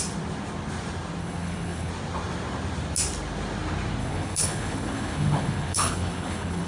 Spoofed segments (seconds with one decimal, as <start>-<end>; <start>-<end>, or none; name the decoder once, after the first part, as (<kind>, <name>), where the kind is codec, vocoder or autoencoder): 1.2-1.9 (codec, HILCodec); 4.0-6.7